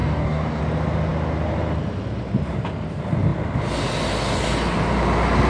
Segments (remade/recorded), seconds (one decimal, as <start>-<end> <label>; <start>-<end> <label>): 0.0-0.6 remade; 0.6-5.5 recorded